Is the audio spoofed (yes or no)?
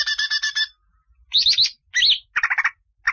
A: no